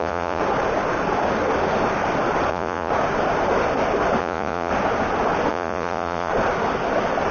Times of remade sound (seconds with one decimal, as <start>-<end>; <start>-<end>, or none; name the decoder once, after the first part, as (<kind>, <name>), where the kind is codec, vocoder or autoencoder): 0.0-0.4 (vocoder, Vocos); 2.5-2.9; 4.2-4.7; 5.5-6.3